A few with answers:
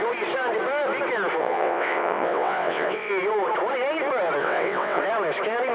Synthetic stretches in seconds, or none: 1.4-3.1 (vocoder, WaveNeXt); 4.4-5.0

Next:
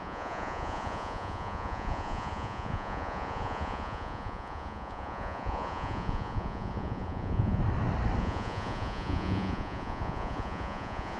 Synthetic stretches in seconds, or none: 0.0-7.6 (vocoder, Vocos); 8.2-11.2